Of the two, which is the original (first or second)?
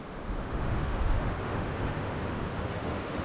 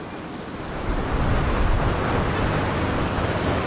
second